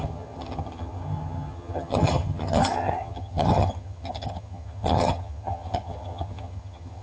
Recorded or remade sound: remade